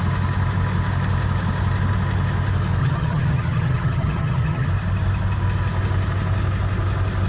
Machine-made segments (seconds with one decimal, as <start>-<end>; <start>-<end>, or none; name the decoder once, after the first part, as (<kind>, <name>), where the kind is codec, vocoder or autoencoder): 2.8-4.7 (vocoder, HiFi-GAN)